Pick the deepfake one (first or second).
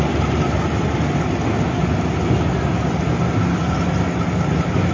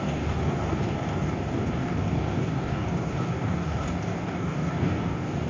second